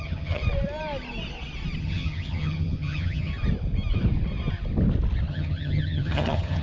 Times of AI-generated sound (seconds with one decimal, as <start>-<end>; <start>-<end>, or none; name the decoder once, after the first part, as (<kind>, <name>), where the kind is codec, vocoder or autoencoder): 0.0-0.4 (vocoder, HiFi-GAN); 1.8-3.3; 5.3-6.6